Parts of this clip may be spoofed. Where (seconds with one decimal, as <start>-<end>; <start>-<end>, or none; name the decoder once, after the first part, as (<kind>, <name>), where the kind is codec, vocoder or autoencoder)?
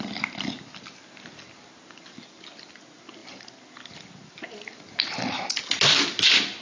none